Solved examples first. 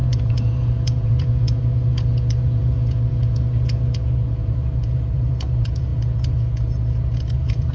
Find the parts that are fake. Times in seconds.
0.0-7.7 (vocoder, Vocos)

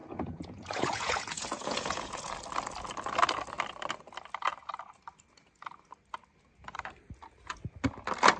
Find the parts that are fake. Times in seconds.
0.0-2.3 (vocoder, Vocos)

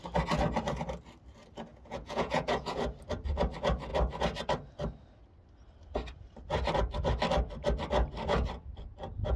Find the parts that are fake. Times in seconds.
1.7-2.8 (vocoder, Vocos)

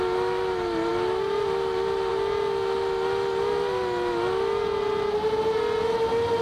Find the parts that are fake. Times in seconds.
none

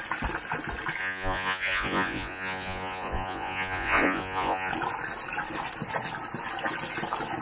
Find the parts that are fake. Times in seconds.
1.0-4.7 (vocoder, Vocos)

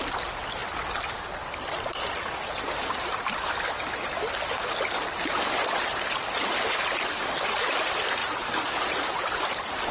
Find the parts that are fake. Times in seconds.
8.2-9.1 (vocoder, Vocos)

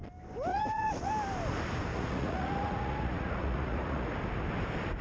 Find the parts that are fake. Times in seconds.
0.5-1.1 (vocoder, Vocos); 1.9-4.1

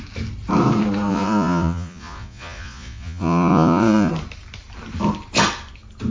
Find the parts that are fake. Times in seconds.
1.1-4.1 (vocoder, Vocos)